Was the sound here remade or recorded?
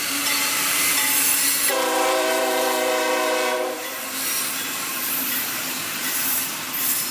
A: remade